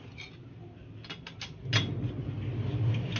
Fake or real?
real